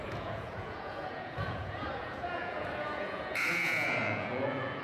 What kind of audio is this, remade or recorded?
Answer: remade